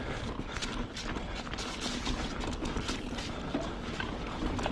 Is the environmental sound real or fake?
real